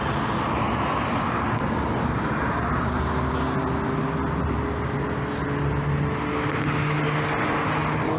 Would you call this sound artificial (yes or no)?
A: no